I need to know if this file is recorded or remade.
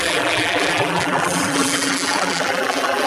remade